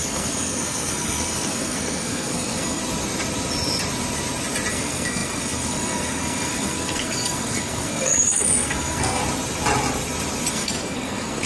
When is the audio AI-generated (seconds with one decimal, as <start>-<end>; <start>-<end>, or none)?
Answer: 0.0-2.8; 4.7-9.2; 10.5-11.5